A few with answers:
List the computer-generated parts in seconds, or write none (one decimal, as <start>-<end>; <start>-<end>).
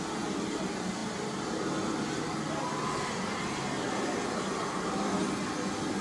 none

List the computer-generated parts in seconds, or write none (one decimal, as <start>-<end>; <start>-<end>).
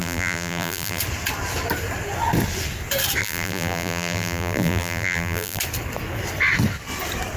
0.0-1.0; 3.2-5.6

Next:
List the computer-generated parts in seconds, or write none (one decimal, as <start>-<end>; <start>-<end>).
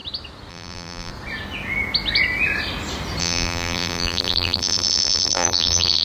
0.5-1.1; 3.2-6.0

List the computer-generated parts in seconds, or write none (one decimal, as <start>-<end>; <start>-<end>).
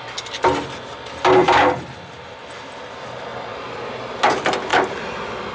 1.4-2.6; 3.3-4.0; 4.7-5.5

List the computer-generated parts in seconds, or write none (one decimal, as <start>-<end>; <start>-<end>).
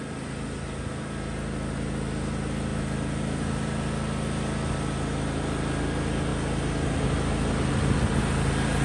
none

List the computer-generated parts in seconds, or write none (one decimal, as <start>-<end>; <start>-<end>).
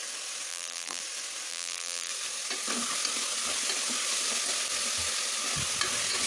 0.5-1.0; 1.5-2.1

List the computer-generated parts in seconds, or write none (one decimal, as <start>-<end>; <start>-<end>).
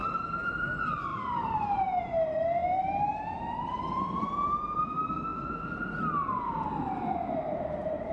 0.0-0.6; 1.1-2.0; 2.6-4.8